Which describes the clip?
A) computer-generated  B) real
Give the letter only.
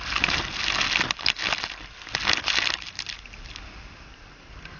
B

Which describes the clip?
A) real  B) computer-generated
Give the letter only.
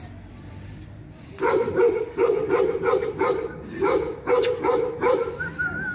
A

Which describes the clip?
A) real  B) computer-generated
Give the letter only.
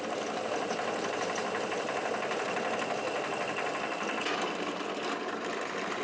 A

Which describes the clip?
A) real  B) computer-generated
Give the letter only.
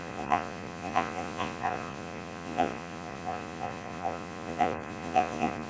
B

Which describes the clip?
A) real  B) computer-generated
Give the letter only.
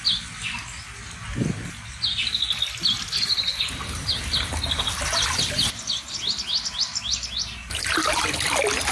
A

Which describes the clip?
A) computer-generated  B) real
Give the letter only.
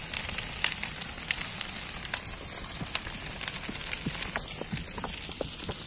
B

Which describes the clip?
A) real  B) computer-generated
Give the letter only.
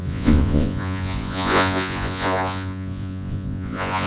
B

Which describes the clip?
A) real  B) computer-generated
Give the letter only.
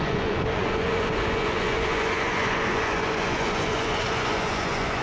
B